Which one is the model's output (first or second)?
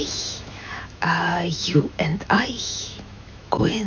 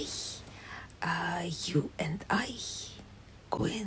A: first